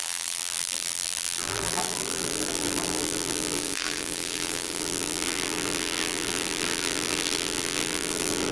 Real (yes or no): no